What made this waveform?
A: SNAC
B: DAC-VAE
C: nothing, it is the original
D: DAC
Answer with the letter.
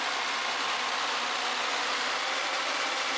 C